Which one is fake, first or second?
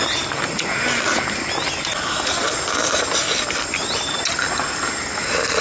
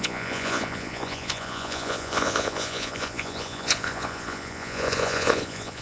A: second